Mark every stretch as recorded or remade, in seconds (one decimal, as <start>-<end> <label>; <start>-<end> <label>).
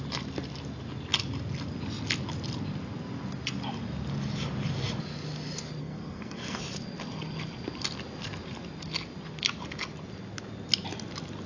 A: 0.0-5.8 recorded; 5.8-6.6 remade; 6.6-11.5 recorded